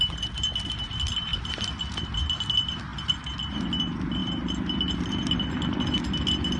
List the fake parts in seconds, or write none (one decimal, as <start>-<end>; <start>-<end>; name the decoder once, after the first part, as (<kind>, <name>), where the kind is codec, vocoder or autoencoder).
none